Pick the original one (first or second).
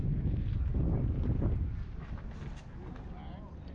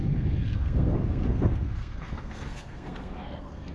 first